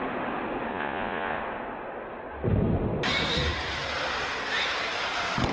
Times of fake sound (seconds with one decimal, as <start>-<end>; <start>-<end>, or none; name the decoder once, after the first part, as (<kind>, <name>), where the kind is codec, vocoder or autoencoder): 0.7-1.4 (vocoder, Vocos)